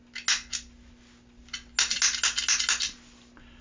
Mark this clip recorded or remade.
recorded